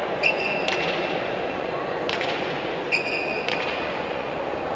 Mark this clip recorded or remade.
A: remade